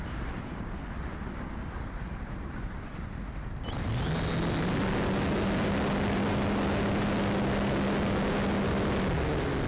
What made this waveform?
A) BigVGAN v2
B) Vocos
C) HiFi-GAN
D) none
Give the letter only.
D